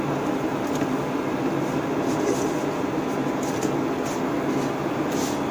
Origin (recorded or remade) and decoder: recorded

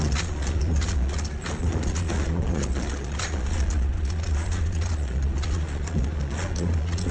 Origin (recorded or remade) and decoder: remade, vocoder, Vocos